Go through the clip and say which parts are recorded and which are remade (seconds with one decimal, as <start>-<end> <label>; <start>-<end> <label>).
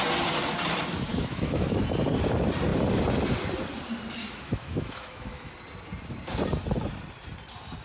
0.0-1.1 recorded; 1.1-1.8 remade; 1.8-4.2 recorded; 4.2-5.5 remade; 5.5-7.8 recorded